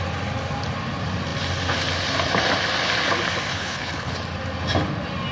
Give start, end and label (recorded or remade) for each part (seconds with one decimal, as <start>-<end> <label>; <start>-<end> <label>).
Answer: 0.0-3.5 recorded; 3.5-4.1 remade; 4.1-5.3 recorded